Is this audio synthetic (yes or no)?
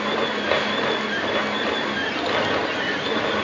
no